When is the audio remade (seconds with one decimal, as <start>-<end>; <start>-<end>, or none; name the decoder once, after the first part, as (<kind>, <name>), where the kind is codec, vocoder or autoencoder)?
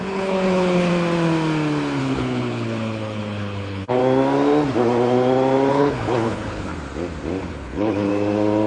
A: 0.0-0.9 (codec, HILCodec); 2.0-4.0; 5.7-6.7; 7.5-8.1